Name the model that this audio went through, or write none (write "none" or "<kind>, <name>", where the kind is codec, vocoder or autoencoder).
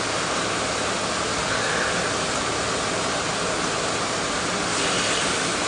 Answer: none